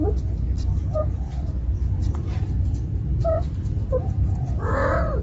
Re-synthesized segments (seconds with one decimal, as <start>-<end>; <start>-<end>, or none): 1.3-3.2